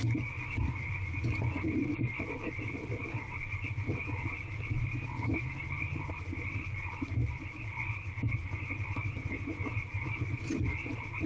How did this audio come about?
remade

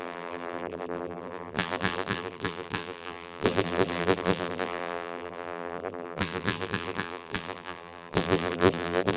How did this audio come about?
remade